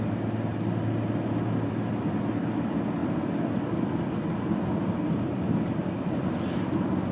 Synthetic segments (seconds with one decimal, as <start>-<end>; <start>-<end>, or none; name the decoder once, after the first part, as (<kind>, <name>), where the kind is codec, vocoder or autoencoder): none